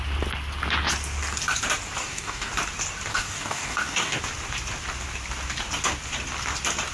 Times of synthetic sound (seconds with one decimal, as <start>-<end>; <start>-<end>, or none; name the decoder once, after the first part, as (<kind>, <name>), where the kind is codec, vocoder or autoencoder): 2.0-2.5 (codec, DAC); 3.1-4.2